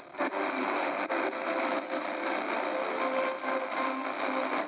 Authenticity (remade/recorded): recorded